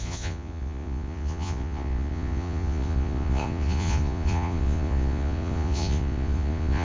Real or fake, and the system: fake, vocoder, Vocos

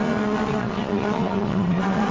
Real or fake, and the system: fake, vocoder, Vocos